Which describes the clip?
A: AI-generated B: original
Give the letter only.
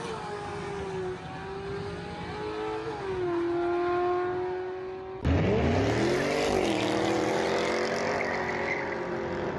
B